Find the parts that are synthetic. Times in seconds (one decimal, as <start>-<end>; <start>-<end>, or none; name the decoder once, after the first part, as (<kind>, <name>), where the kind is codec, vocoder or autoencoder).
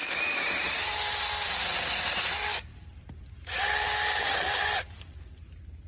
none